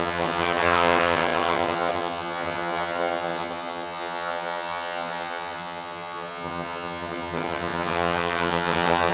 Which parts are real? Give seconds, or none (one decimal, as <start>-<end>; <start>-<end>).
none